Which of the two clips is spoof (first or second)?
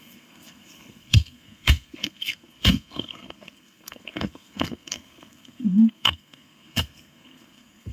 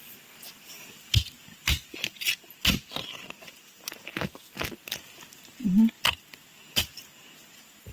first